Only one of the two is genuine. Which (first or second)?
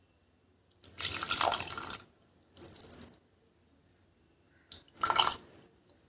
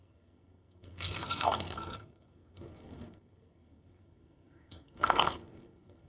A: first